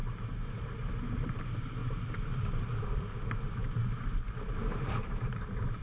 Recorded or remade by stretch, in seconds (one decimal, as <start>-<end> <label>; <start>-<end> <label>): 0.0-0.9 remade; 0.9-1.8 recorded; 1.8-3.0 remade; 3.0-3.6 recorded; 3.6-5.8 remade